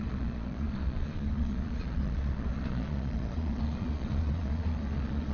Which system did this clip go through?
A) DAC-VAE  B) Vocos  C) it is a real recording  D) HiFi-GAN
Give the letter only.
B